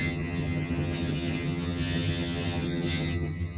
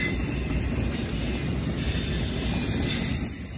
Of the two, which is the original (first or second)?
second